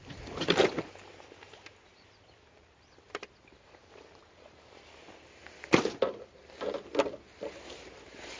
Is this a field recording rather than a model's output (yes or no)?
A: yes